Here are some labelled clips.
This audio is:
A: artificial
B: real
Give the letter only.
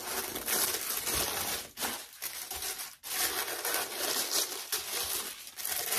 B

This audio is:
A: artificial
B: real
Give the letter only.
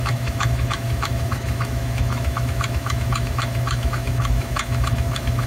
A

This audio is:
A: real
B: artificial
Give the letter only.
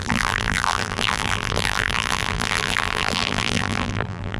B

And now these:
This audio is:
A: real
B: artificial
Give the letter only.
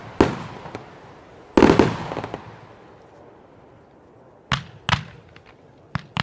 A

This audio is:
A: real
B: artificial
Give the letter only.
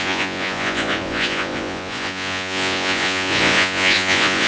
B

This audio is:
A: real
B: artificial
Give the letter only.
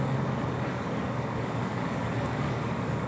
B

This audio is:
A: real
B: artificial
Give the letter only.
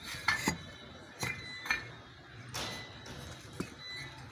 A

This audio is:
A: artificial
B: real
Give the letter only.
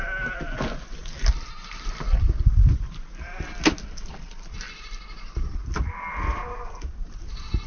B